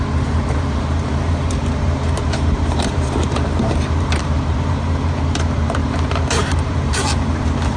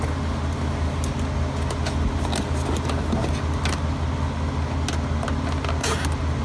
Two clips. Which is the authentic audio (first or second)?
second